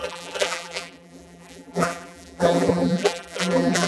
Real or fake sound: fake